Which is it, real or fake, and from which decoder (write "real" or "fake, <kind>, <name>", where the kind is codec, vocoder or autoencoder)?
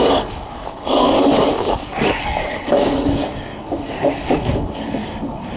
fake, codec, DAC